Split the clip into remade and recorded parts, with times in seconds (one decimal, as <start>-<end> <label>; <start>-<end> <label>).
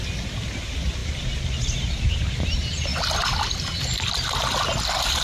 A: 0.0-5.2 recorded